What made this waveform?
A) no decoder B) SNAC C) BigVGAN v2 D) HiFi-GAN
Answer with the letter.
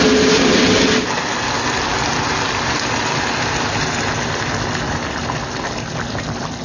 A